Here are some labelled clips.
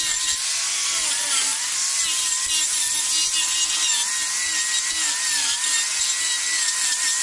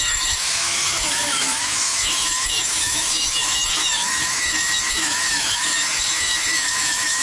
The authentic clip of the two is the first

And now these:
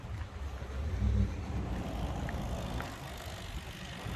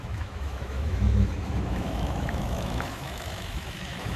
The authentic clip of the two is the first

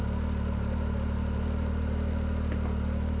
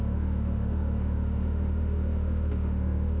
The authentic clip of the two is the first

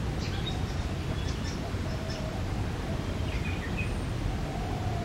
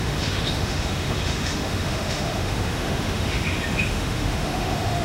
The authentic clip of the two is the first